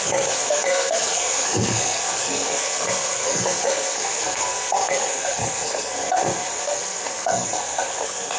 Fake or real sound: fake